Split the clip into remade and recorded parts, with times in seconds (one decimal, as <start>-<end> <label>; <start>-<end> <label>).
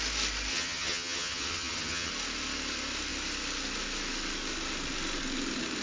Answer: 0.0-0.5 recorded; 0.5-2.1 remade; 2.1-5.8 recorded